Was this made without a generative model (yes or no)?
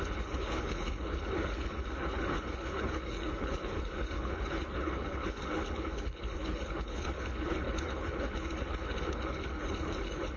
no